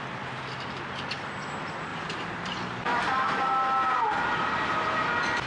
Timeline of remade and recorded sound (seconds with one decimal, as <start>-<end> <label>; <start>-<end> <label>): 0.0-1.9 recorded; 1.9-3.0 remade; 3.0-5.5 recorded

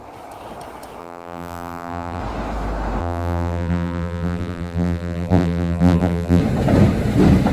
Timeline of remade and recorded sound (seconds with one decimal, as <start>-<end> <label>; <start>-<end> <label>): 0.0-1.0 recorded; 1.0-2.2 remade; 2.2-3.0 recorded; 3.0-6.4 remade; 6.4-7.5 recorded

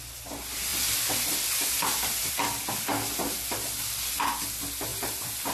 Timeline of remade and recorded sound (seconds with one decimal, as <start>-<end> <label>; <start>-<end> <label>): 0.0-0.7 recorded; 0.7-2.7 remade; 2.7-4.9 recorded; 4.9-5.5 remade